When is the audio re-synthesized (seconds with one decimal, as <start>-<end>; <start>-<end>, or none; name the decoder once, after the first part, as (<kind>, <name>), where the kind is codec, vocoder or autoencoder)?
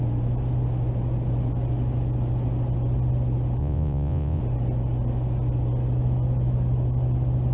3.6-4.4 (vocoder, Vocos)